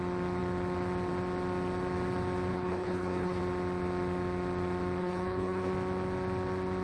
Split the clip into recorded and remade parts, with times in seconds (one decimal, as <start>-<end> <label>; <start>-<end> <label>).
0.0-2.5 recorded; 2.5-3.4 remade; 3.4-5.0 recorded; 5.0-5.7 remade; 5.7-6.8 recorded